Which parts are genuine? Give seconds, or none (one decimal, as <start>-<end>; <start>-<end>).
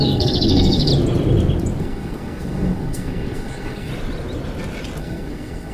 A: 0.9-1.8; 3.9-5.0